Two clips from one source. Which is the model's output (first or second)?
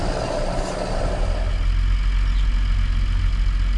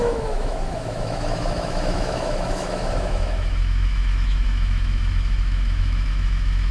second